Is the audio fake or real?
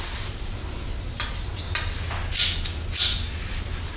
real